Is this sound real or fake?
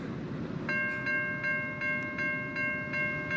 real